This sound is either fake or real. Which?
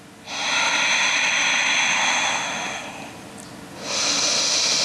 real